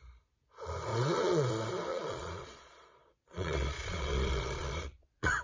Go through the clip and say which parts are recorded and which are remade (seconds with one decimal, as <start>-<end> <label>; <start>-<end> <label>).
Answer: 0.0-0.9 recorded; 0.9-1.5 remade; 1.5-1.9 recorded; 1.9-5.4 remade

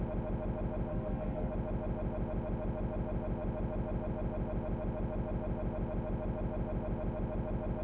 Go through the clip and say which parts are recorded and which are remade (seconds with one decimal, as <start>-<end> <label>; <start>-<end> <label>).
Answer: 0.0-0.9 recorded; 0.9-1.5 remade; 1.5-7.8 recorded

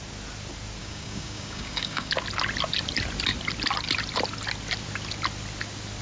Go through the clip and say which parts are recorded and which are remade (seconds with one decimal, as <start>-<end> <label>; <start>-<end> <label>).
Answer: 0.0-0.8 recorded; 0.8-2.1 remade; 2.1-6.0 recorded

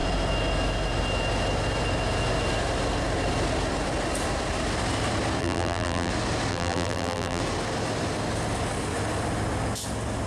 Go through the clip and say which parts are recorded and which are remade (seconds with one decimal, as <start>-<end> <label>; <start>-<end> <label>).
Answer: 0.0-5.4 recorded; 5.4-6.1 remade; 6.1-6.5 recorded; 6.5-7.4 remade; 7.4-10.3 recorded

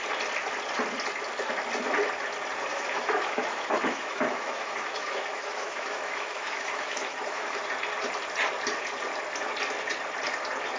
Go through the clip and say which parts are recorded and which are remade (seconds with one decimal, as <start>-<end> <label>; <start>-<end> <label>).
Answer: 0.0-2.7 recorded; 2.7-7.6 remade; 7.6-10.8 recorded

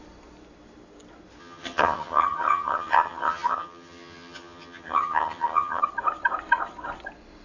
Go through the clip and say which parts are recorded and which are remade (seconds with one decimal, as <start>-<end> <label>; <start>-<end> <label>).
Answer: 0.0-1.4 recorded; 1.4-5.8 remade; 5.8-7.4 recorded

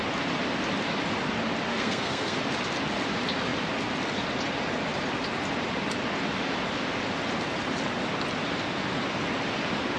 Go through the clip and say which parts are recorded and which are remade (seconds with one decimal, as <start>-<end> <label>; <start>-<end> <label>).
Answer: 0.0-1.7 recorded; 1.7-2.4 remade; 2.4-10.0 recorded

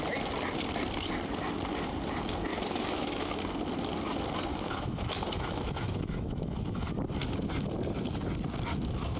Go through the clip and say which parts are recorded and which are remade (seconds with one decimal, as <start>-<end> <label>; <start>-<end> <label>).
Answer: 0.0-2.5 recorded; 2.5-3.3 remade; 3.3-4.5 recorded; 4.5-6.9 remade; 6.9-9.2 recorded